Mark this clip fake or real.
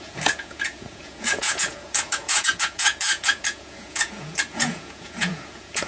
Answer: fake